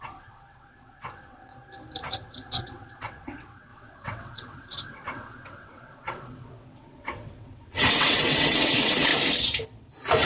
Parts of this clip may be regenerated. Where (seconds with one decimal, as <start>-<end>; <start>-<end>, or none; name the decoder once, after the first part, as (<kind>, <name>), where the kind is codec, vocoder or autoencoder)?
0.0-1.5 (vocoder, WaveNeXt); 2.1-9.1